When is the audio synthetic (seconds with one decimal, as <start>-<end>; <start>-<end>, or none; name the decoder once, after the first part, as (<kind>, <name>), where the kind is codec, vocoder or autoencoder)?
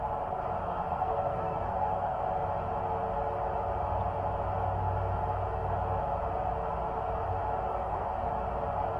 0.6-2.2 (codec, SNAC); 7.7-8.3